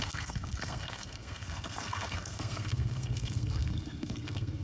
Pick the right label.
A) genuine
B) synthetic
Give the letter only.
B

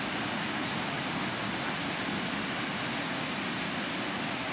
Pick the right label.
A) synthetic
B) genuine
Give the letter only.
B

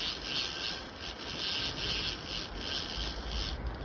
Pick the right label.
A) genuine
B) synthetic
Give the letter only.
A